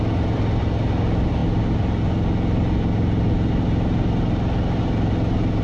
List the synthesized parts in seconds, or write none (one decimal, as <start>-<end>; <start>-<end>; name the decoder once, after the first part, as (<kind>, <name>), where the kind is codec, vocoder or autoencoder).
none